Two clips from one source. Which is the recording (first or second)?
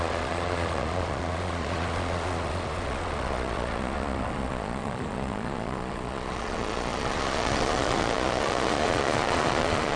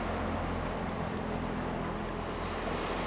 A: second